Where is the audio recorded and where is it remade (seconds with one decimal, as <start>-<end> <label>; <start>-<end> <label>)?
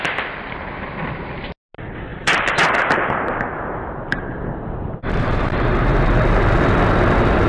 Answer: 0.0-2.1 recorded; 2.1-5.7 remade; 5.7-7.5 recorded